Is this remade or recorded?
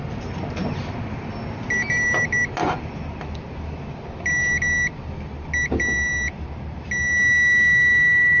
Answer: recorded